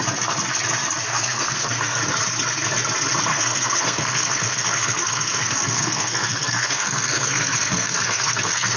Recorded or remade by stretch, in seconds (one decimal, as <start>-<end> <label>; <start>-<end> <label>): 0.0-1.1 recorded; 1.1-2.0 remade; 2.0-3.3 recorded; 3.3-8.8 remade